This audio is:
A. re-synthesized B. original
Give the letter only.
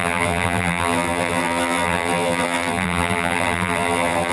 A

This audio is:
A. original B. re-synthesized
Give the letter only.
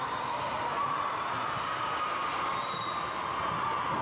A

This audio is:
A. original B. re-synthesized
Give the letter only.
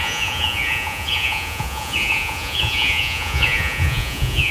B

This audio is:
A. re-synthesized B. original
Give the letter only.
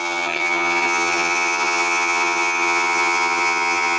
A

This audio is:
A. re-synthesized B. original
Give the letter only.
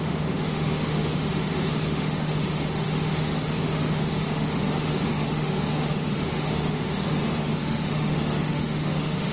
A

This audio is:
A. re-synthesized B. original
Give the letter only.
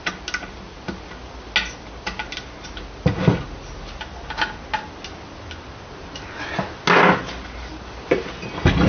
B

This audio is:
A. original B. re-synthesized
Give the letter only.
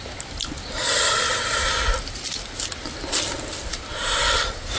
A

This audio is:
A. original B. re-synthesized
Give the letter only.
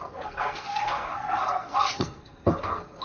B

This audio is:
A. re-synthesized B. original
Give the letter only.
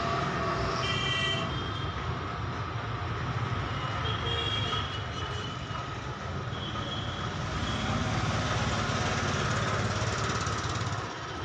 B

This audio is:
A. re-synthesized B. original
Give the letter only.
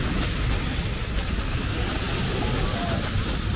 B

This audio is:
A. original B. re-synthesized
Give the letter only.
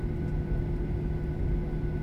A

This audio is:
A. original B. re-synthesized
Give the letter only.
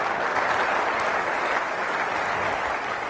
A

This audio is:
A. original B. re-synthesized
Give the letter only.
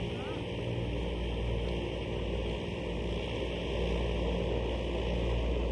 A